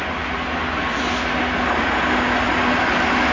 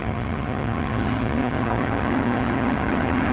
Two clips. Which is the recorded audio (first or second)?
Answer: first